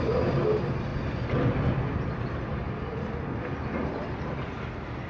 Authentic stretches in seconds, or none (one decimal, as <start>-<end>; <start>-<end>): 0.0-5.1